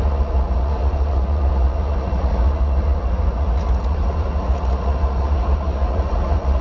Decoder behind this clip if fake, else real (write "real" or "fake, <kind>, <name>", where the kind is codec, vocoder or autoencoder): fake, vocoder, Vocos